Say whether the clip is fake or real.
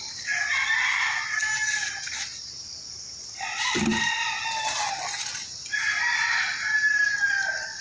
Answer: real